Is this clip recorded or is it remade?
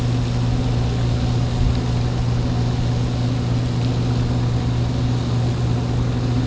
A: recorded